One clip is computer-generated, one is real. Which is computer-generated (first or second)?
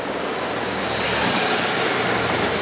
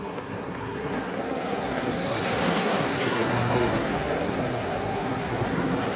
second